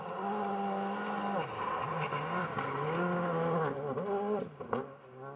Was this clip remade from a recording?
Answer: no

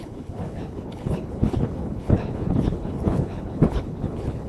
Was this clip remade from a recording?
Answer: yes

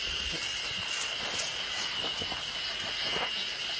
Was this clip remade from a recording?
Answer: no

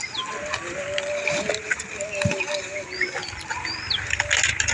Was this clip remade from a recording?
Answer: no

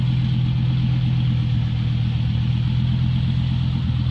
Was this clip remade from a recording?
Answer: no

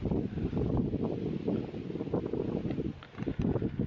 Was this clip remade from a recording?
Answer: no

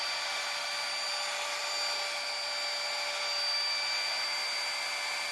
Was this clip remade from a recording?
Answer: no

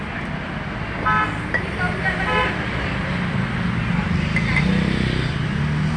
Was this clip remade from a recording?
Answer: no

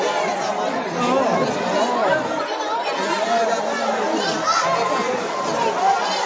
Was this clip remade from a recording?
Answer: no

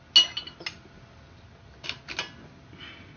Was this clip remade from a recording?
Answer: no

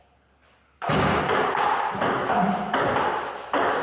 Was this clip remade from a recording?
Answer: no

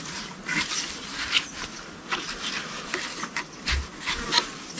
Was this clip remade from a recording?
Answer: no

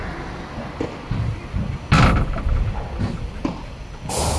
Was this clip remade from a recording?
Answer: no